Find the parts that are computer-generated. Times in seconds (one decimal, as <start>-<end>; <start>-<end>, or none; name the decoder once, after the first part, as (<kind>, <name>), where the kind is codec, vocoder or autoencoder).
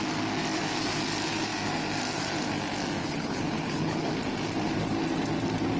3.0-4.1 (codec, HILCodec)